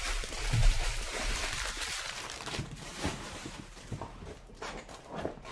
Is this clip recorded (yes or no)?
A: no